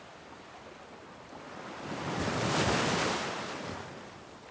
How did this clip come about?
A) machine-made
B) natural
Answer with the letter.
B